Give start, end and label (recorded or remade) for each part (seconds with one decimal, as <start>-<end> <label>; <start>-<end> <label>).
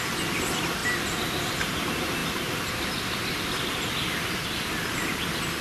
0.0-5.6 recorded